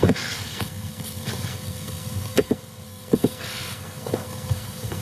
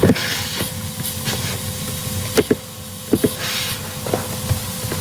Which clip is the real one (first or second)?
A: second